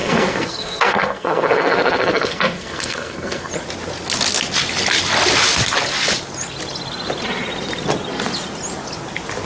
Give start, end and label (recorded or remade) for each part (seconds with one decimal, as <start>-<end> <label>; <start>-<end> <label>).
0.0-3.5 remade; 3.5-9.5 recorded